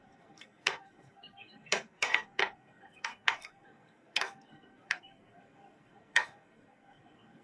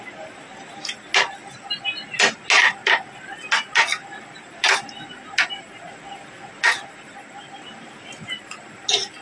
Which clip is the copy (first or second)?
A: first